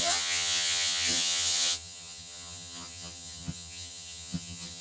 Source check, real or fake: fake